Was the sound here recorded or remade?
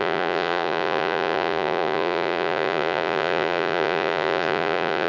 remade